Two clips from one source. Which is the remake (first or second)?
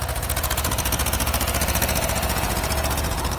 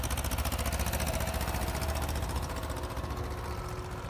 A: first